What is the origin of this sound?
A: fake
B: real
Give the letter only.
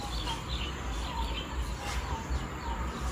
B